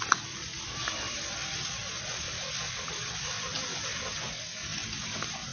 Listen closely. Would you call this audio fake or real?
real